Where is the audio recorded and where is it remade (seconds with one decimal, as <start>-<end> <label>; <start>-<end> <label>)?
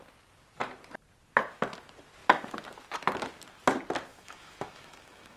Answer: 0.0-4.1 recorded; 4.1-5.4 remade